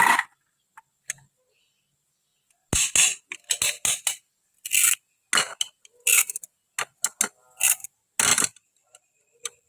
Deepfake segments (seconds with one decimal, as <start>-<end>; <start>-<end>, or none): 8.3-9.7